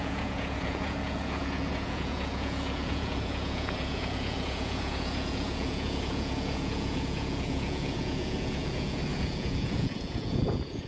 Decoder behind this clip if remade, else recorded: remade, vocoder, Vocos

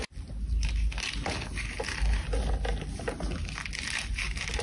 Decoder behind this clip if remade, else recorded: recorded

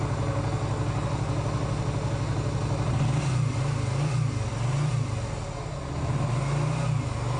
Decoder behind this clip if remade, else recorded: recorded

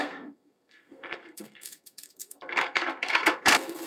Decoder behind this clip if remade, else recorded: remade, codec, SNAC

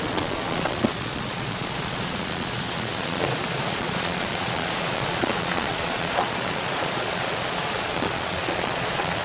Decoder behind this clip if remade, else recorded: remade, vocoder, Vocos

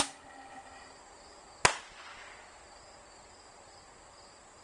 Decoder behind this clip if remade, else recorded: recorded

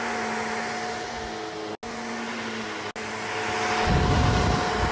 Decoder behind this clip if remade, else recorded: recorded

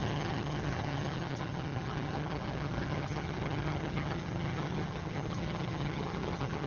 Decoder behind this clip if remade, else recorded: remade, vocoder, HiFi-GAN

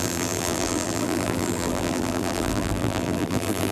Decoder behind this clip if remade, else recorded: remade, vocoder, BigVGAN v2